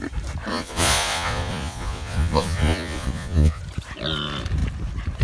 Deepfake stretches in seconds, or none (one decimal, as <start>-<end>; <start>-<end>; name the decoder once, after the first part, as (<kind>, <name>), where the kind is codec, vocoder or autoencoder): 0.5-3.6 (vocoder, Vocos)

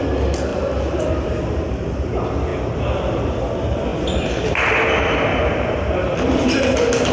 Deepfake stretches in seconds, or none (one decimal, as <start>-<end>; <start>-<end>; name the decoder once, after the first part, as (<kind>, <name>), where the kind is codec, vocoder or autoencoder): 0.5-1.3 (vocoder, BigVGAN v2); 5.3-7.1

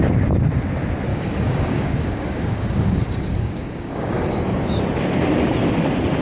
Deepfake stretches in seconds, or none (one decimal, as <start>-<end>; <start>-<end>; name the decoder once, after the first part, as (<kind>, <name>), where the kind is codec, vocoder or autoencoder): 1.1-4.8 (codec, DAC)

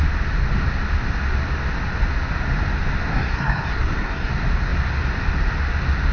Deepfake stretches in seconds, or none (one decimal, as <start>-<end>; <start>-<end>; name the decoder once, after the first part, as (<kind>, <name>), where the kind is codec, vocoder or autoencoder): 3.1-4.3 (codec, SNAC)

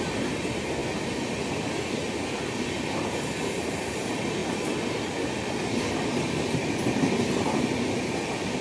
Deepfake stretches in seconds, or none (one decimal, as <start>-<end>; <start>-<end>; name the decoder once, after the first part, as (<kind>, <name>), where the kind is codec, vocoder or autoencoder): none

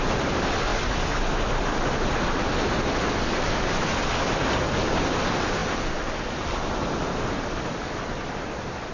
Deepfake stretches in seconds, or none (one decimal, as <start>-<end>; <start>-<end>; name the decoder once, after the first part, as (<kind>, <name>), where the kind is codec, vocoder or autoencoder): none

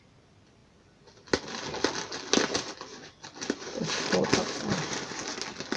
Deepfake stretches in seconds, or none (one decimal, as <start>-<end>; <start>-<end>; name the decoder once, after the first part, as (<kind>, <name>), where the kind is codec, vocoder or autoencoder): none

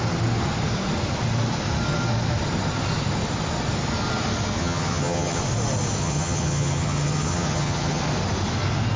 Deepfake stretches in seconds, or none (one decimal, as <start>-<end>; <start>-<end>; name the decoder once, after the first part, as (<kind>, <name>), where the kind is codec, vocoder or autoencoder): 4.6-5.4 (vocoder, HiFi-GAN); 6.0-8.0